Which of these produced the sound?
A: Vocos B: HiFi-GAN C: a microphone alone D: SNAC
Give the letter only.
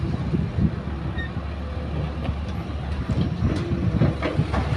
C